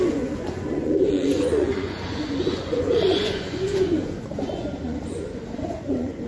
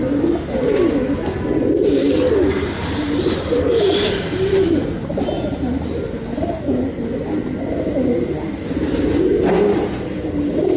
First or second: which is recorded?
second